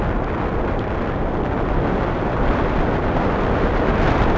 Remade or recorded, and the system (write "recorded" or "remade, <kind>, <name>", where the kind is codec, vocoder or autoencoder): recorded